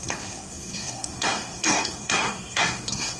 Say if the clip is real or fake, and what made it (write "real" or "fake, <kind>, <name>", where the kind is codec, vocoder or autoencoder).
fake, codec, SNAC